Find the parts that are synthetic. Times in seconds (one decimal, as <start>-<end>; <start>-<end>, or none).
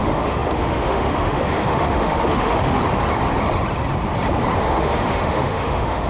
0.0-2.8; 4.6-6.1